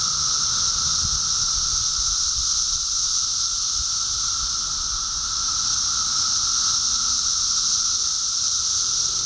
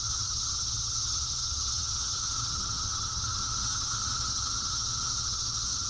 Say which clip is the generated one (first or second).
second